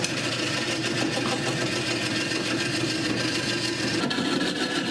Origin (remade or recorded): recorded